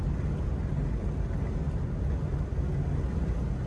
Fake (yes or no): no